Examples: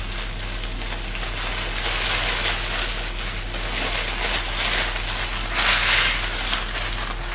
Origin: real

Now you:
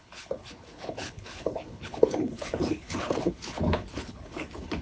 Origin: fake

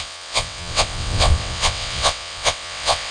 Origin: fake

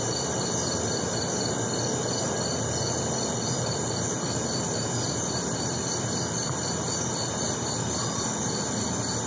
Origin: real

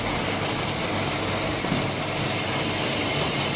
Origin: real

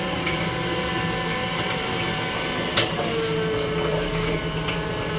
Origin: real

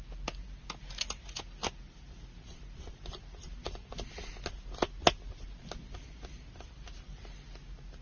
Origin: real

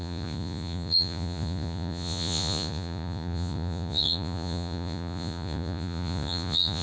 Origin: fake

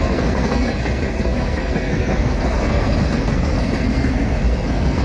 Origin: fake